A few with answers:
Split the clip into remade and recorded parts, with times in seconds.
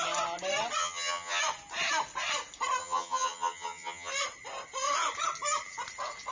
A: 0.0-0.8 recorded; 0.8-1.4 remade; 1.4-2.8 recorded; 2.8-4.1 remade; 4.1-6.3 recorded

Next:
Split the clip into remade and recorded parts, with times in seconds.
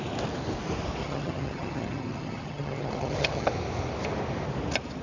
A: 0.0-1.0 recorded; 1.0-3.5 remade; 3.5-5.0 recorded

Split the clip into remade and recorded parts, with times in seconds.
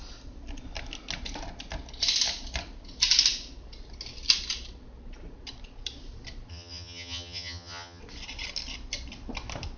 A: 0.0-6.5 recorded; 6.5-8.0 remade; 8.0-9.8 recorded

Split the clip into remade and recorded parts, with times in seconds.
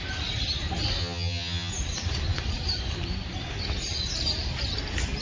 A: 0.0-1.0 recorded; 1.0-1.7 remade; 1.7-5.2 recorded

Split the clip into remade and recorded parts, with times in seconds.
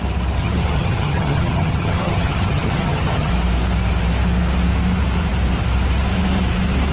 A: 0.0-0.4 recorded; 0.4-3.3 remade; 3.3-6.9 recorded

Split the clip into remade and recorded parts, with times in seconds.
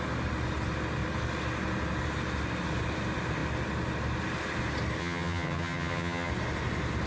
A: 0.0-5.0 recorded; 5.0-6.3 remade; 6.3-7.1 recorded